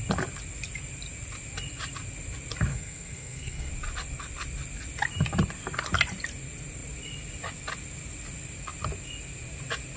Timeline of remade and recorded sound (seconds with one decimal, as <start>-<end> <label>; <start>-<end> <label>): 0.0-2.7 recorded; 2.7-3.7 remade; 3.7-10.0 recorded